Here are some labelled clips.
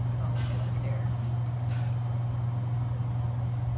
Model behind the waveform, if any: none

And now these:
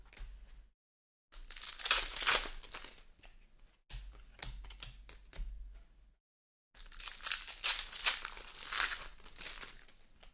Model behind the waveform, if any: none